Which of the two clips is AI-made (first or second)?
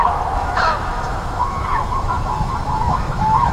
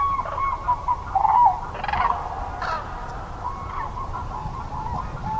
first